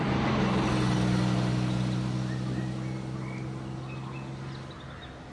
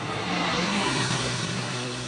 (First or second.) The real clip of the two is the first